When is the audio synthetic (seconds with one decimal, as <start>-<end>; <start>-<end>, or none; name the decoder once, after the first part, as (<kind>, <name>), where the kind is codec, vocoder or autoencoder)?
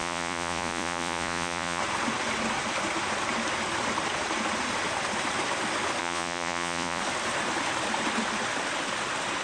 0.0-1.8 (vocoder, Vocos); 6.0-7.0